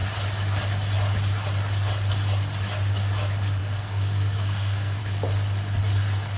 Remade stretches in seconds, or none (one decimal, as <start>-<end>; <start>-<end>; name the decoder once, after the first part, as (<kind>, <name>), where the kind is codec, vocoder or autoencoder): 3.6-5.0 (codec, SNAC)